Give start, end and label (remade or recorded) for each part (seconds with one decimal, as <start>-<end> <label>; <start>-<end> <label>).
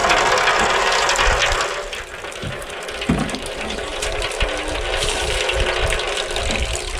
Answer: 0.0-2.4 recorded; 2.4-4.0 remade; 4.0-7.0 recorded